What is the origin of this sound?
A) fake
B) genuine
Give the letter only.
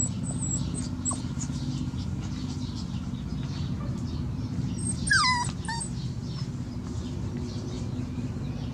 B